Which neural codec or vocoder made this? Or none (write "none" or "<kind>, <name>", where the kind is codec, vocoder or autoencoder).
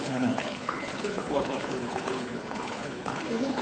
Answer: codec, HILCodec